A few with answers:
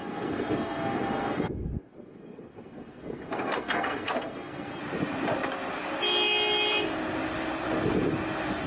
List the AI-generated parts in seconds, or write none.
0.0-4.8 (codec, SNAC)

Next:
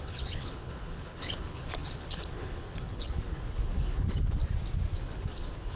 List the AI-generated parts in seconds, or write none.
0.0-4.4 (codec, HILCodec); 5.0-5.8

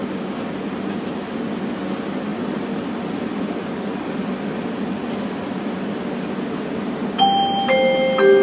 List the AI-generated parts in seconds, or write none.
2.3-6.0 (vocoder, BigVGAN v2)

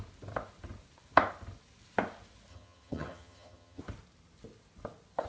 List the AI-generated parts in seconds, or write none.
2.5-3.8 (vocoder, HiFi-GAN)

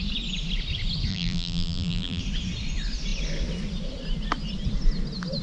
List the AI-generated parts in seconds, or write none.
1.1-2.2 (vocoder, BigVGAN v2)

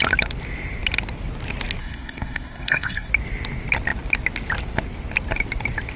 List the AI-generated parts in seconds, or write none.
1.8-3.1 (codec, SNAC)

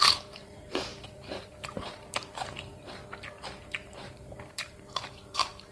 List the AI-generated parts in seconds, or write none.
0.0-3.0 (vocoder, BigVGAN v2); 3.6-5.7

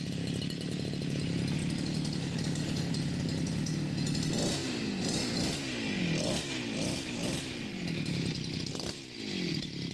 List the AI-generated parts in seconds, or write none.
none